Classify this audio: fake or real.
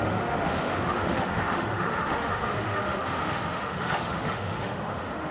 fake